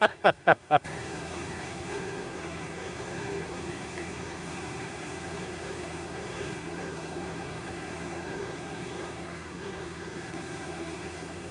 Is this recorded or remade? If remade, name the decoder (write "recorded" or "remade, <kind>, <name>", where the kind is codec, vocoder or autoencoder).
remade, codec, SNAC